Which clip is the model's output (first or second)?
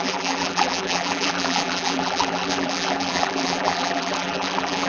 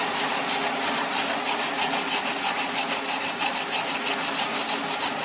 first